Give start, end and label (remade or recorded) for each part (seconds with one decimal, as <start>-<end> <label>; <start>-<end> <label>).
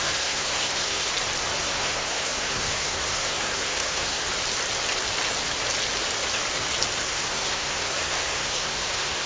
0.0-1.1 remade; 1.1-1.6 recorded; 1.6-4.2 remade; 4.2-7.0 recorded; 7.0-9.3 remade